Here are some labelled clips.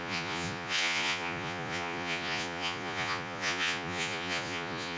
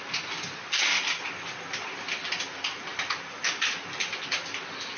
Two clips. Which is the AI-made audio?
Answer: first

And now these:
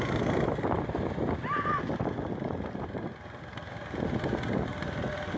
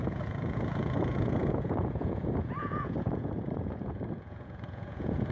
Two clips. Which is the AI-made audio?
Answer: second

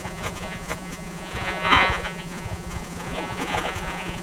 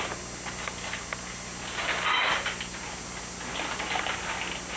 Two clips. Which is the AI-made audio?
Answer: first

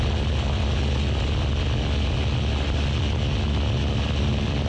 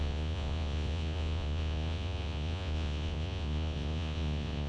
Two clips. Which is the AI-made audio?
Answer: second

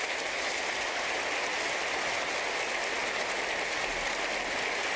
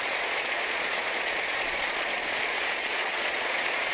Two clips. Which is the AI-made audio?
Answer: second